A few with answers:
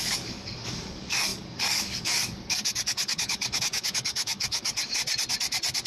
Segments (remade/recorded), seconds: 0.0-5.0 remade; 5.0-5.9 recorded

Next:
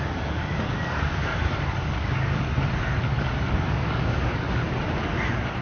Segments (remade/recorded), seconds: 0.0-1.3 remade; 1.3-1.9 recorded; 1.9-2.5 remade; 2.5-3.0 recorded; 3.0-4.6 remade; 4.6-5.6 recorded

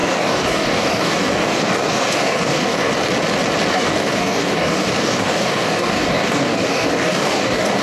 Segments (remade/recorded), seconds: 0.0-2.9 remade; 2.9-3.7 recorded; 3.7-7.8 remade

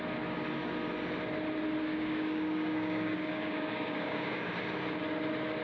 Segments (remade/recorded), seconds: 0.0-1.9 recorded; 1.9-4.5 remade; 4.5-5.6 recorded

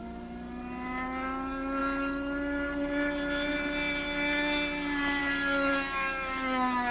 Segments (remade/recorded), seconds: 0.0-6.9 recorded